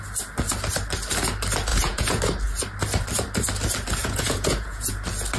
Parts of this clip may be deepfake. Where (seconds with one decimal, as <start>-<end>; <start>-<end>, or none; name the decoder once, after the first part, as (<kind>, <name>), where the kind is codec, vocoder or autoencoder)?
1.7-2.2 (vocoder, Vocos); 4.0-4.9